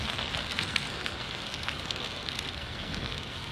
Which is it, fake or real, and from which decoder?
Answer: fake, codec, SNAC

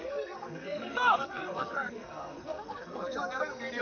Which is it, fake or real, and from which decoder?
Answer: fake, codec, SNAC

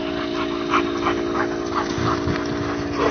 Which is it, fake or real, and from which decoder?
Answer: real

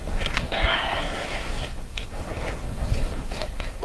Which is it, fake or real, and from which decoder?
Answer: fake, codec, SNAC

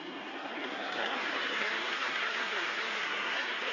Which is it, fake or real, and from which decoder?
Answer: fake, codec, SNAC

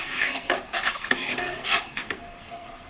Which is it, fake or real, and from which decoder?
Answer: fake, codec, SNAC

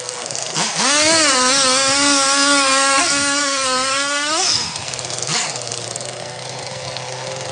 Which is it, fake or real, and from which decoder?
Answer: fake, codec, SNAC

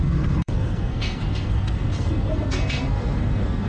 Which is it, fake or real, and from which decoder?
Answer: fake, codec, SNAC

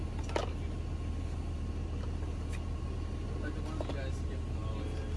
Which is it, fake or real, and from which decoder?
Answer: real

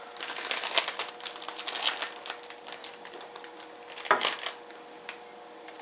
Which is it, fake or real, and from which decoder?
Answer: real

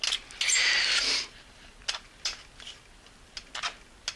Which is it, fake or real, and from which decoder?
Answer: real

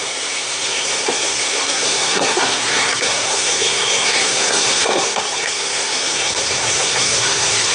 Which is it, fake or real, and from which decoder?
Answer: fake, codec, SNAC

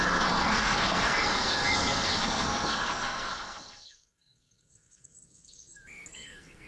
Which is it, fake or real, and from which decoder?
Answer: fake, codec, SNAC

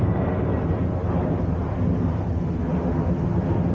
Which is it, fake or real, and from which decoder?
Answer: real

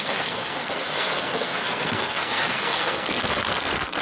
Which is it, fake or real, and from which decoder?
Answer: fake, codec, SNAC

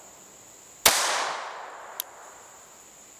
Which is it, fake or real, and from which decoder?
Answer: real